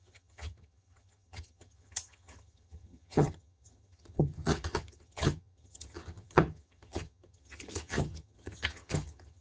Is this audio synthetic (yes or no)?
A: yes